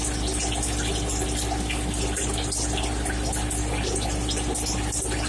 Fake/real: real